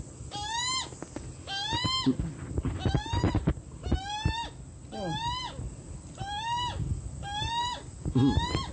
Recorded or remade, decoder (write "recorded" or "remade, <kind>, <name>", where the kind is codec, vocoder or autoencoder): recorded